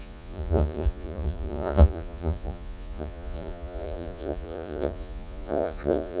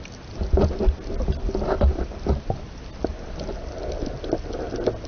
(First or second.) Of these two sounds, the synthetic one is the first